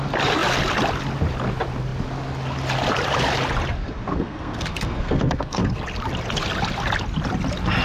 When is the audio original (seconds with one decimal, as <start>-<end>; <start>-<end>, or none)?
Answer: 0.0-4.1; 5.8-7.8